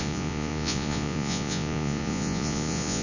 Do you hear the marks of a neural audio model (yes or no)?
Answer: yes